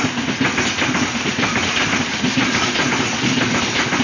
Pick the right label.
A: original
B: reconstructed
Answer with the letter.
A